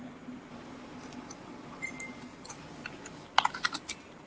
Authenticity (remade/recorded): recorded